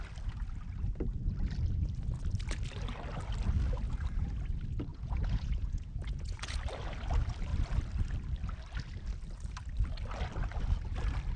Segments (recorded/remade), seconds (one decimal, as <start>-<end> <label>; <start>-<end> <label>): 0.0-4.9 recorded; 4.9-6.6 remade; 6.6-11.4 recorded